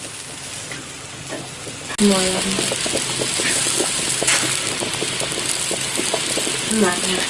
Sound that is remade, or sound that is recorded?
recorded